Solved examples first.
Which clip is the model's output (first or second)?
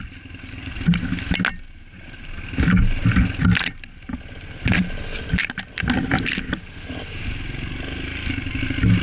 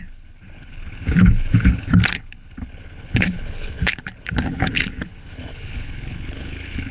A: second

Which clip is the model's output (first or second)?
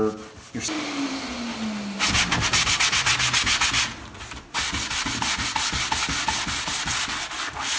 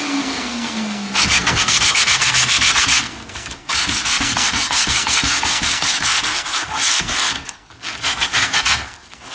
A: second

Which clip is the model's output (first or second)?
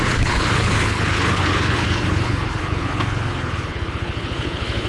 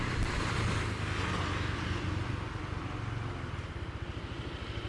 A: first